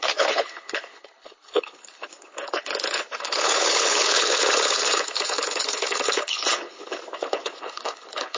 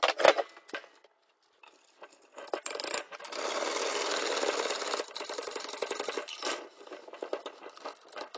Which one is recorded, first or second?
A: second